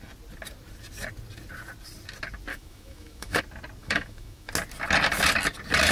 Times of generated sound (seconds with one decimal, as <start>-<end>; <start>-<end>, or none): 2.5-3.4; 3.8-4.5